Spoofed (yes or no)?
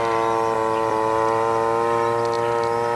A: no